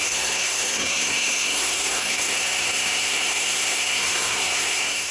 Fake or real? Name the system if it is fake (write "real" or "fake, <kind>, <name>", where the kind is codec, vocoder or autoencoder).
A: fake, codec, SNAC